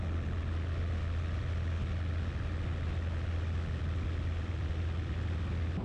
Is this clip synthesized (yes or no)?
no